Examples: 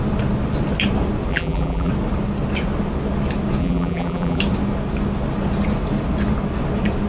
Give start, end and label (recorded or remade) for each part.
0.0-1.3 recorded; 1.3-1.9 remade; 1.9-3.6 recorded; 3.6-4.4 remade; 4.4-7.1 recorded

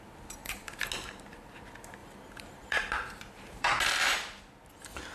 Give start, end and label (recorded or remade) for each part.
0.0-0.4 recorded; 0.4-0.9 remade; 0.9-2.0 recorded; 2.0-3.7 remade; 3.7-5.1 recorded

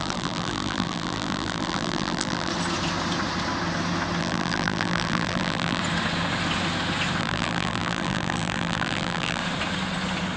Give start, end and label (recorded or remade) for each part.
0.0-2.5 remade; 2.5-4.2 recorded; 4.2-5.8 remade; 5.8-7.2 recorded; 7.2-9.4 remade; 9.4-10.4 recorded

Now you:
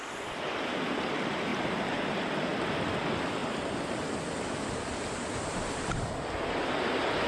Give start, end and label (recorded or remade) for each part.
0.0-1.5 recorded; 1.5-2.0 remade; 2.0-7.3 recorded